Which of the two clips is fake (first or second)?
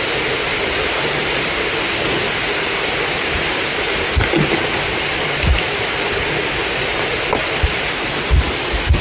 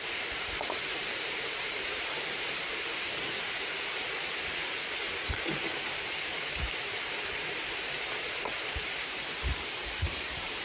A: second